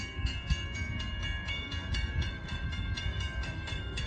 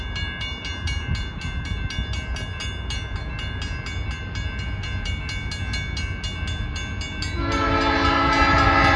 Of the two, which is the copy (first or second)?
first